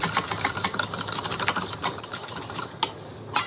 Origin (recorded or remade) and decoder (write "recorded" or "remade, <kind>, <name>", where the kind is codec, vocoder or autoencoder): recorded